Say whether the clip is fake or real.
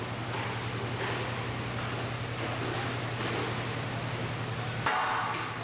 real